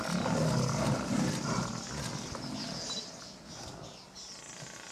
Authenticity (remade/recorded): recorded